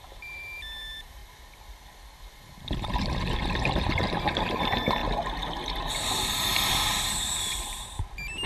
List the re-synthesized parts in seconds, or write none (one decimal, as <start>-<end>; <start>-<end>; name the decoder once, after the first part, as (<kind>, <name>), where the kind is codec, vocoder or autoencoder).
0.0-1.2 (vocoder, BigVGAN v2); 3.7-5.0; 7.0-8.5